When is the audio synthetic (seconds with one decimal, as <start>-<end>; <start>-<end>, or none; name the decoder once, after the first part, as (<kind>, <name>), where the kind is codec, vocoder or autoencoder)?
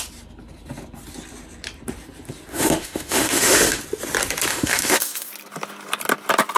2.5-3.8 (autoencoder, DAC-VAE); 4.5-5.3